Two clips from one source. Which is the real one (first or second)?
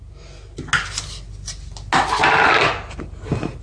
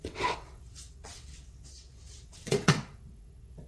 first